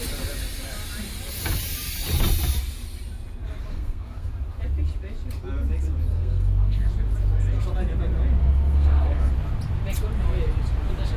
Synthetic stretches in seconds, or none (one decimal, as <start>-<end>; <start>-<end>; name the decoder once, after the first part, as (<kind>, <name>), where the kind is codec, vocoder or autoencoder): 3.7-4.3 (codec, SNAC); 6.1-6.9; 8.4-9.3